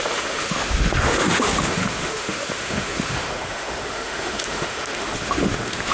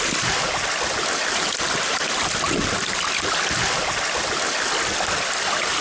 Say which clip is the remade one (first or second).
first